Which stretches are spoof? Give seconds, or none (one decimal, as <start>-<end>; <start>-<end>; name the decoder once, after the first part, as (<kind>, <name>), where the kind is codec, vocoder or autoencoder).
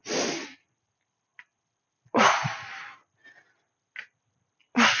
none